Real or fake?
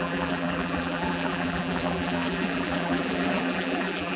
fake